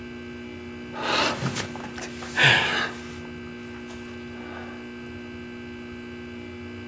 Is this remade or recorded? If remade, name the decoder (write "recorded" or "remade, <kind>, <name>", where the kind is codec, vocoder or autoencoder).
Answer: recorded